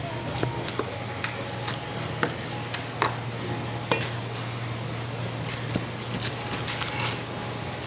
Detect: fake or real real